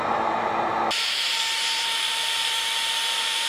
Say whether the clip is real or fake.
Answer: fake